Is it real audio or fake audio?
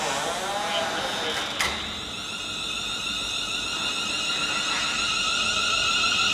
real